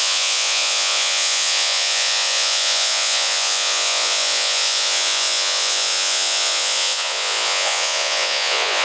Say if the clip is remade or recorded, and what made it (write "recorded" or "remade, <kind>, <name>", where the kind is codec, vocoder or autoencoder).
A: remade, vocoder, Vocos